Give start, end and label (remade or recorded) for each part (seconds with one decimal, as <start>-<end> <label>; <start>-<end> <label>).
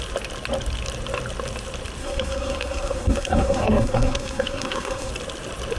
0.0-2.0 recorded; 2.0-5.1 remade; 5.1-5.8 recorded